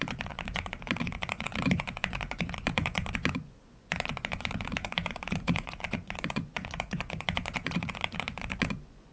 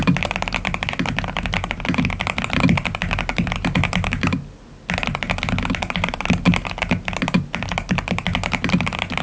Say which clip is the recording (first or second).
second